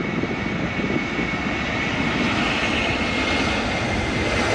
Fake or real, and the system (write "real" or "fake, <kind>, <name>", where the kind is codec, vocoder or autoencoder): real